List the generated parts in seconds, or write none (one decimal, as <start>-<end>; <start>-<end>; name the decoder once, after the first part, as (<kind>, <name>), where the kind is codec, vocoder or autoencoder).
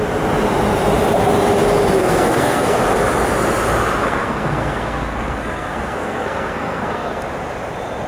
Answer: 2.0-2.8 (codec, SNAC); 4.0-7.2